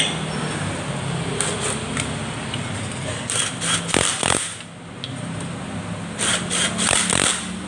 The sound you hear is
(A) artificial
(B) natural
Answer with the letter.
B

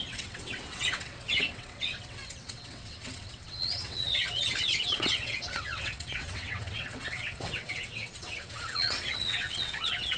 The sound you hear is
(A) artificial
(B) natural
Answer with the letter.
A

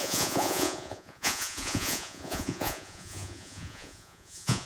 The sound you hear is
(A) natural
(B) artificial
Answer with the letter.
B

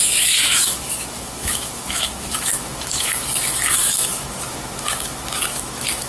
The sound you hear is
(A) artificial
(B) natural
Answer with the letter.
A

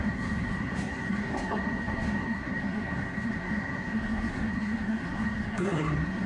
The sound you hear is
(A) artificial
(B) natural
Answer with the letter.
A